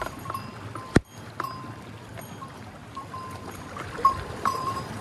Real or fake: real